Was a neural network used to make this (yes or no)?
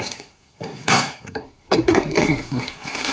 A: yes